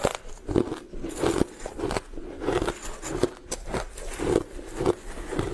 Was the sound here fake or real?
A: real